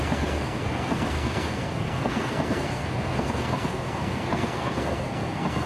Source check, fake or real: fake